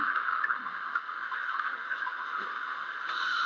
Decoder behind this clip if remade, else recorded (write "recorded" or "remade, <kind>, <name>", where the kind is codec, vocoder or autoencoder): remade, autoencoder, DAC-VAE